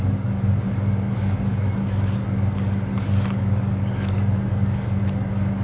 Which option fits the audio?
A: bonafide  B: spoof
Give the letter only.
B